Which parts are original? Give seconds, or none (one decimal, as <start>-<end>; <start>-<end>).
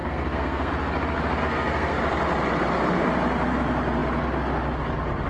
0.7-1.4; 2.0-5.3